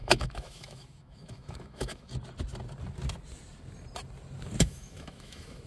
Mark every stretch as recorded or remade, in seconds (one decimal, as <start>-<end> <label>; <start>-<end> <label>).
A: 0.0-2.1 remade; 2.1-4.6 recorded; 4.6-5.7 remade